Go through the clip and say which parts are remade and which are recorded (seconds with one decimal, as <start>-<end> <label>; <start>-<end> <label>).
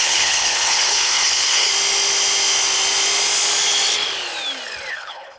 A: 0.0-1.7 remade; 1.7-4.9 recorded; 4.9-5.4 remade